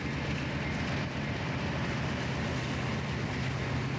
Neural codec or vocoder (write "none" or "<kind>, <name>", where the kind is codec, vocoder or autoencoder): none